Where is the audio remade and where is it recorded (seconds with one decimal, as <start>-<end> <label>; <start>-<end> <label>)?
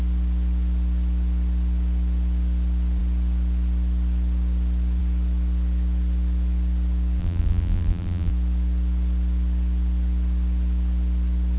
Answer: 0.0-7.2 recorded; 7.2-8.3 remade; 8.3-11.6 recorded